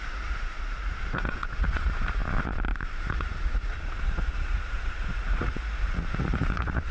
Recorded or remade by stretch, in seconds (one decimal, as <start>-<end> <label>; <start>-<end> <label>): 0.0-2.2 remade; 2.2-3.0 recorded; 3.0-6.9 remade